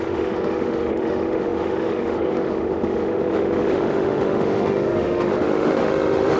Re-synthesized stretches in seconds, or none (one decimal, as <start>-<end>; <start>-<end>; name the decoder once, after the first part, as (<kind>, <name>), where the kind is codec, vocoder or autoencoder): 0.0-6.4 (autoencoder, DAC-VAE)